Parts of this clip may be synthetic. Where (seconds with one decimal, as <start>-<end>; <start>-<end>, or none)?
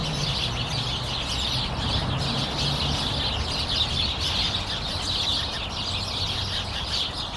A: none